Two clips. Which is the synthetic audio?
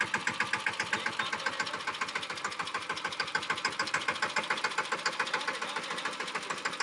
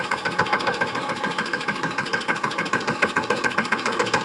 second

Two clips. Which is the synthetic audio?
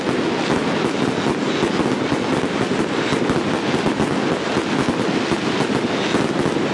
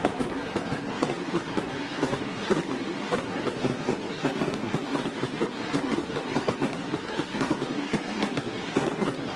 second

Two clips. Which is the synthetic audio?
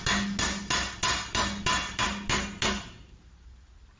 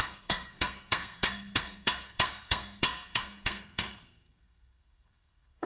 second